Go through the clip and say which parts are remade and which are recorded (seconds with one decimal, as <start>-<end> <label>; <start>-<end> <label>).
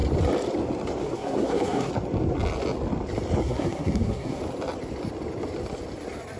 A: 0.0-1.0 recorded; 1.0-1.9 remade; 1.9-3.4 recorded; 3.4-4.4 remade; 4.4-6.4 recorded